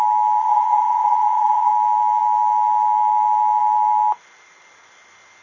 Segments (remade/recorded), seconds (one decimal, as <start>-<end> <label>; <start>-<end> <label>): 0.0-0.4 recorded; 0.4-1.7 remade; 1.7-5.4 recorded